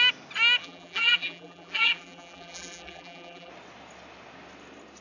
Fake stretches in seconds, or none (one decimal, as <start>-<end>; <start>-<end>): 0.6-3.5